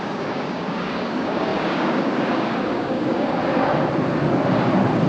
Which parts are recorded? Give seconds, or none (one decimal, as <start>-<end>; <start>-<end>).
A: 3.4-5.1